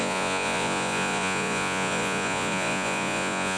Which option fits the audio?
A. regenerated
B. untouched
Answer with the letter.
A